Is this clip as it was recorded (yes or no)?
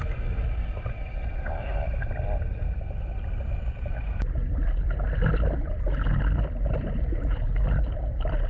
yes